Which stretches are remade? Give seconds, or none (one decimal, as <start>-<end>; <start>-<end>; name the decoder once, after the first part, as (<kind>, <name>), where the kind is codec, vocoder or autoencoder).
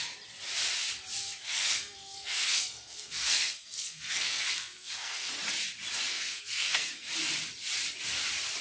1.2-5.4 (codec, SNAC); 6.1-7.1